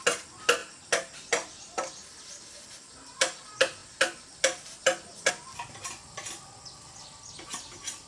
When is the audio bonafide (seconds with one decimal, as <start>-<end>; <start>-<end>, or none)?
0.0-8.1